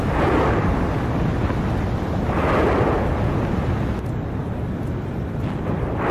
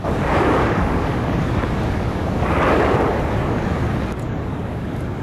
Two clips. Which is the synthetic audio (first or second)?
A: second